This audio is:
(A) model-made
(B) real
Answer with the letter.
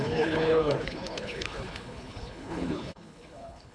A